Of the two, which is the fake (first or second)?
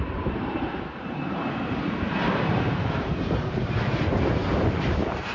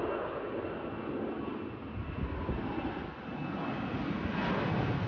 first